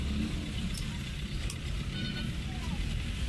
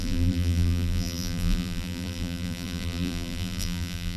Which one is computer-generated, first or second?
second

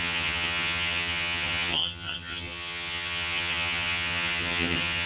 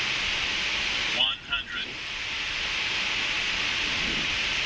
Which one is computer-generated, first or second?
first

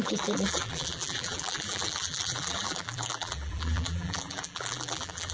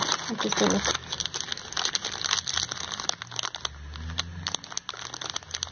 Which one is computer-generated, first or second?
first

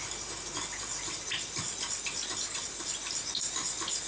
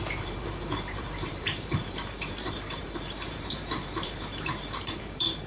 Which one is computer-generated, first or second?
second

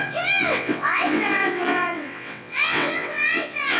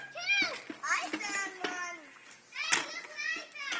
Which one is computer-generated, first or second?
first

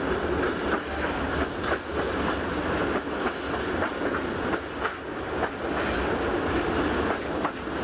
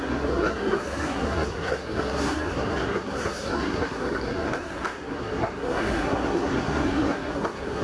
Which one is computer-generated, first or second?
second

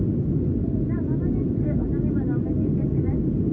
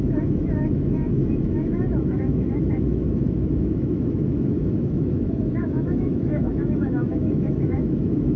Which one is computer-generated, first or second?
second